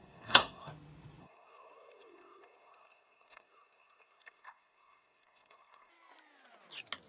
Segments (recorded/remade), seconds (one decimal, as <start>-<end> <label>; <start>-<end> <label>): 0.0-0.7 remade; 0.7-1.2 recorded; 1.2-5.9 remade; 5.9-7.1 recorded